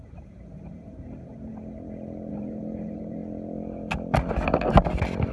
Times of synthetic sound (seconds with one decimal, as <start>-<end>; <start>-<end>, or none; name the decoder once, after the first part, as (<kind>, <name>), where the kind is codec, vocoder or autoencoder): 0.0-1.5 (vocoder, BigVGAN v2); 2.3-3.2